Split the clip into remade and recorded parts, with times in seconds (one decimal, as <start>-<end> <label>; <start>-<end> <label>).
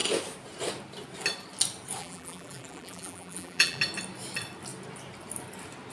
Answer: 0.0-2.0 recorded; 2.0-3.8 remade; 3.8-5.9 recorded